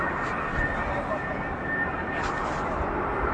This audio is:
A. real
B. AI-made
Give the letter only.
A